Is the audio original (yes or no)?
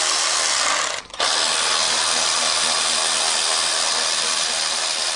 yes